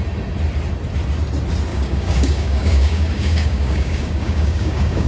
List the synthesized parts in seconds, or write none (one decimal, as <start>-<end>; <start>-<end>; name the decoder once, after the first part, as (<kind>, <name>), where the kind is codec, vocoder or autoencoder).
1.7-5.1 (codec, DAC)